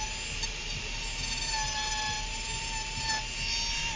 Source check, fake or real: real